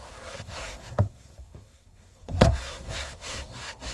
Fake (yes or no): yes